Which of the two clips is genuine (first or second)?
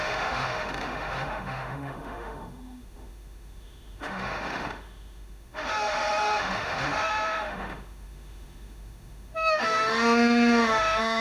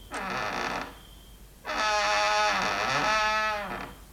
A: second